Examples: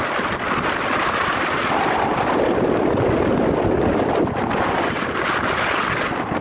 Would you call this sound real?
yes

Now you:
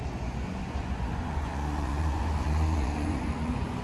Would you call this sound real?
no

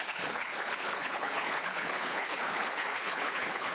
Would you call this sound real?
no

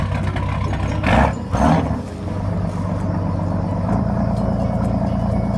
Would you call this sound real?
yes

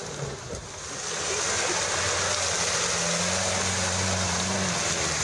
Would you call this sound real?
yes